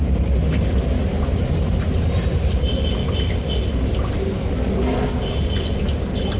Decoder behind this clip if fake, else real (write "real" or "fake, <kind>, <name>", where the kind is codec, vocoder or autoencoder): real